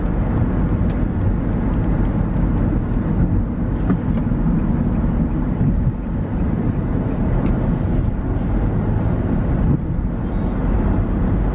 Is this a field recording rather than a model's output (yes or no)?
yes